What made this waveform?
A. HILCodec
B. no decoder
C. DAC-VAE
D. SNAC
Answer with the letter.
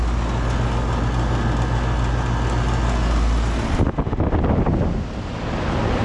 B